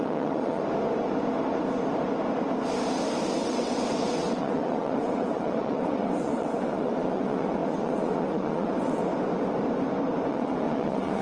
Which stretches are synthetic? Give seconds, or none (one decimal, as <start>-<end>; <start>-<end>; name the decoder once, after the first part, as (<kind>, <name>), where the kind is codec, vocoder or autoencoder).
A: 0.0-0.6 (vocoder, WaveNeXt); 3.4-9.0; 10.3-11.2